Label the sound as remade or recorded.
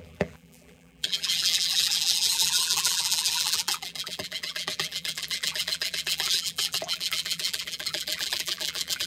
remade